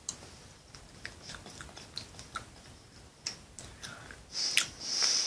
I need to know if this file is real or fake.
real